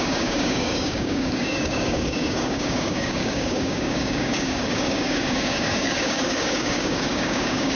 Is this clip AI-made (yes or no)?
yes